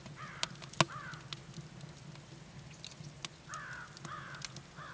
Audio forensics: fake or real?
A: real